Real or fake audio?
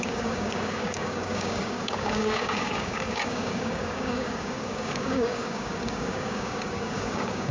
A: fake